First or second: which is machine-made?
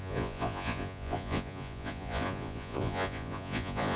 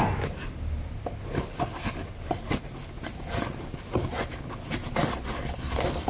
first